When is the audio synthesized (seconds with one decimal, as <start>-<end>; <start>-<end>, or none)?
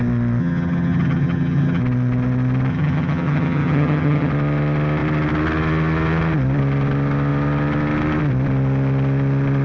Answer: 0.4-1.8; 2.7-4.3